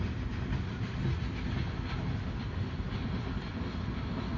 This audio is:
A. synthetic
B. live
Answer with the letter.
B